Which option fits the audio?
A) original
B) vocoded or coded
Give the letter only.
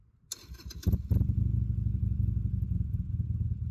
A